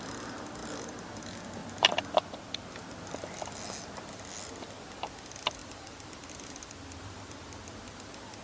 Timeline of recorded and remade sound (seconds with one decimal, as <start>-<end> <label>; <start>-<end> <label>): 0.0-5.6 recorded; 5.6-6.3 remade; 6.3-8.4 recorded